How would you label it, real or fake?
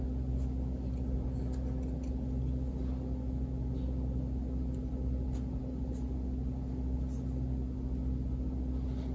real